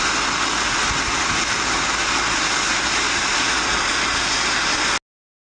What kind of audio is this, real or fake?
real